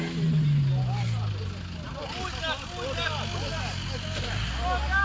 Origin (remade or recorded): recorded